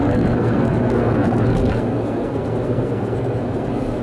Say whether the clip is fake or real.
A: fake